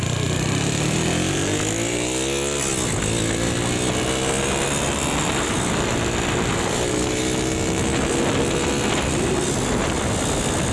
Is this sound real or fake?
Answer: real